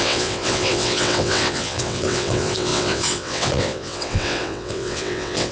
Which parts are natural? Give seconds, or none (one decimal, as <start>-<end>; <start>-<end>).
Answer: none